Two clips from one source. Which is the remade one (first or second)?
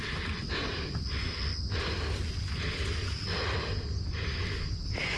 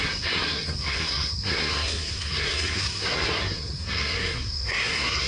second